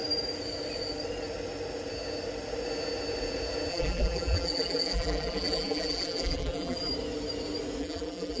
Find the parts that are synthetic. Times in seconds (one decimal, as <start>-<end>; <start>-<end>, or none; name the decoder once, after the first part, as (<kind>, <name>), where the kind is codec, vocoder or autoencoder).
3.7-6.9 (vocoder, BigVGAN v2); 7.8-8.4